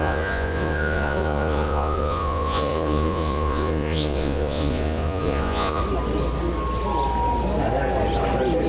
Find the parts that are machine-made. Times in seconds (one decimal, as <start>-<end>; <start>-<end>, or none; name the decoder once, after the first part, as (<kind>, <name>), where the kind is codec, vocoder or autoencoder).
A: 0.0-5.8 (vocoder, Vocos)